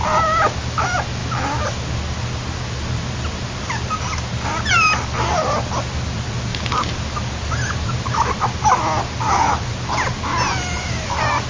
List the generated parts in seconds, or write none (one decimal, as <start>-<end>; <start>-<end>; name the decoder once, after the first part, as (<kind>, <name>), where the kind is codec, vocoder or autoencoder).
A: none